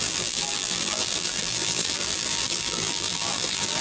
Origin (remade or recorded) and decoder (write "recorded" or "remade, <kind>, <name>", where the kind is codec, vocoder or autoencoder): remade, vocoder, BigVGAN v2